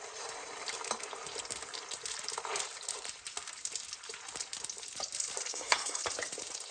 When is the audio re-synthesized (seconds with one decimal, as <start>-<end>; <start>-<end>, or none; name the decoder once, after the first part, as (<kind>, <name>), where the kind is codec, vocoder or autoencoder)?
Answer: 5.5-6.0 (codec, SNAC)